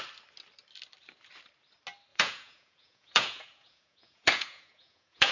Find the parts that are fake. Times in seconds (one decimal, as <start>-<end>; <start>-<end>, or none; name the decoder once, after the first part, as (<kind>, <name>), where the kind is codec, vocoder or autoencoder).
2.1-5.3 (vocoder, Vocos)